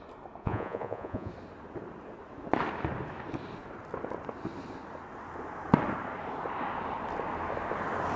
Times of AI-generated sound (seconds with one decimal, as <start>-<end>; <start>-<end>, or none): 0.4-1.3